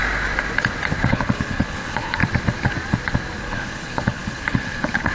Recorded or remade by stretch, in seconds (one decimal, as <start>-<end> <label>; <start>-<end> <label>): 0.0-1.1 recorded; 1.1-2.2 remade; 2.2-3.4 recorded; 3.4-5.1 remade